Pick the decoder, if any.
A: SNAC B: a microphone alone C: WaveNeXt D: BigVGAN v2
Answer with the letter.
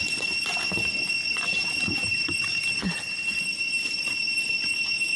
B